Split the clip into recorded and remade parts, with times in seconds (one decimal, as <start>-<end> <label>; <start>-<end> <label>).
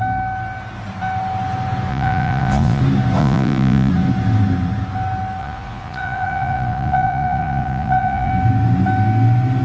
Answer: 0.0-1.9 recorded; 1.9-2.8 remade; 2.8-3.2 recorded; 3.2-3.9 remade; 3.9-5.4 recorded; 5.4-8.3 remade; 8.3-9.6 recorded